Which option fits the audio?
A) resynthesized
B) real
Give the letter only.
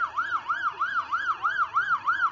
B